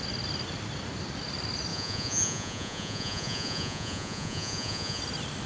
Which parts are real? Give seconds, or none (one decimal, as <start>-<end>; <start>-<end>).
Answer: 0.0-1.7; 5.0-5.5